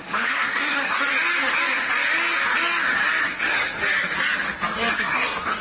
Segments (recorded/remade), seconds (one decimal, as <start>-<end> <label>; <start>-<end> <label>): 0.0-1.1 remade; 1.1-3.2 recorded; 3.2-3.8 remade; 3.8-4.9 recorded; 4.9-5.6 remade

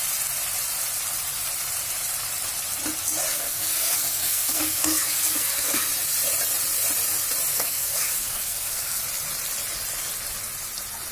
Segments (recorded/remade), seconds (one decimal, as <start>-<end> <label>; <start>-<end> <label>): 0.0-3.3 recorded; 3.3-5.9 remade; 5.9-7.5 recorded; 7.5-9.0 remade; 9.0-11.1 recorded